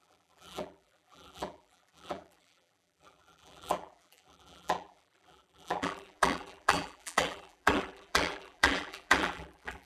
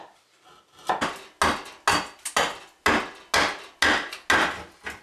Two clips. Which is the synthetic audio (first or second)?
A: first